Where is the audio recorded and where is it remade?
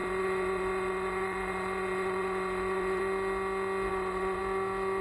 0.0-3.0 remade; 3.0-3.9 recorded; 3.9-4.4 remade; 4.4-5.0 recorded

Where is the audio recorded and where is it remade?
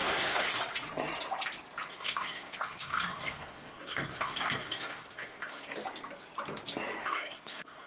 0.0-0.5 remade; 0.5-1.9 recorded; 1.9-5.7 remade; 5.7-7.0 recorded; 7.0-7.9 remade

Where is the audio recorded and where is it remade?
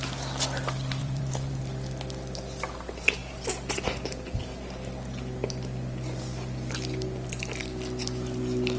0.0-1.0 recorded; 1.0-1.6 remade; 1.6-8.8 recorded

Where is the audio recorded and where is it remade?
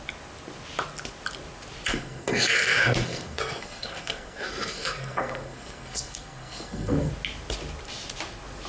0.0-1.9 recorded; 1.9-7.1 remade; 7.1-8.7 recorded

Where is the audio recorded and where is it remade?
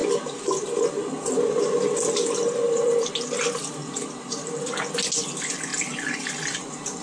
0.0-3.8 recorded; 3.8-4.8 remade; 4.8-7.0 recorded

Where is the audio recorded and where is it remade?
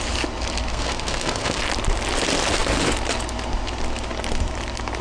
0.0-0.7 recorded; 0.7-1.6 remade; 1.6-5.0 recorded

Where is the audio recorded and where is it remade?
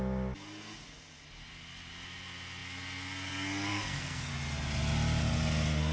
0.0-3.7 recorded; 3.7-4.3 remade; 4.3-5.9 recorded